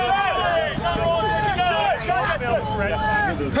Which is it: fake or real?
real